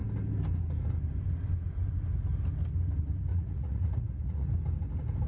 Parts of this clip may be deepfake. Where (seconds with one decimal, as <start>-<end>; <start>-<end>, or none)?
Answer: 3.3-4.5